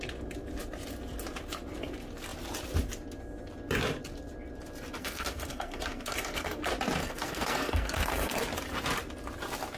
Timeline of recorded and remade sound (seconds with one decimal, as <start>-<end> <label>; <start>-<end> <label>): 0.0-5.0 recorded; 5.0-6.6 remade; 6.6-7.0 recorded; 7.0-8.4 remade; 8.4-9.8 recorded

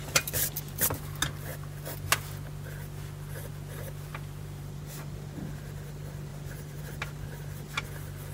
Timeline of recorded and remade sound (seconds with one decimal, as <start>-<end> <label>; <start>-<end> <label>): 0.0-4.1 recorded; 4.1-4.8 remade; 4.8-6.3 recorded; 6.3-6.8 remade; 6.8-8.3 recorded